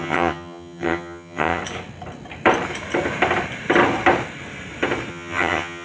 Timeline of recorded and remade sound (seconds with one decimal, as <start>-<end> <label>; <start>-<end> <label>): 0.0-1.6 remade; 1.6-5.1 recorded; 5.1-5.8 remade